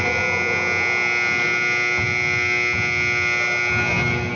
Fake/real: real